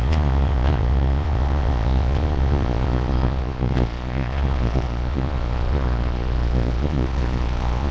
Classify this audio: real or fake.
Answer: fake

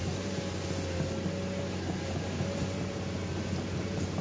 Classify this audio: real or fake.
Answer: real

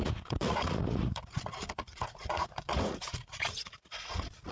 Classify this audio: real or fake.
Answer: fake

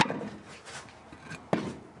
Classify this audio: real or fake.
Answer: real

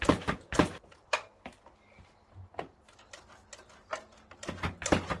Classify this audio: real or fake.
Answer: real